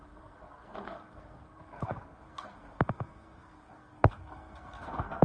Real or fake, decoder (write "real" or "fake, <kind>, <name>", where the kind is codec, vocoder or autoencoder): fake, codec, SNAC